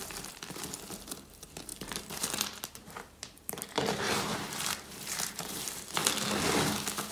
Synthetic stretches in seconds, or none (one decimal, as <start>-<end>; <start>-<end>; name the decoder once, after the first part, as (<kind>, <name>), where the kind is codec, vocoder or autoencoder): 0.0-6.0 (vocoder, BigVGAN v2)